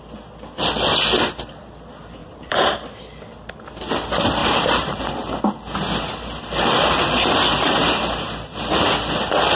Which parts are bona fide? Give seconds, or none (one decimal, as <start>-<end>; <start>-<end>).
0.0-2.2; 3.0-4.4; 5.0-9.6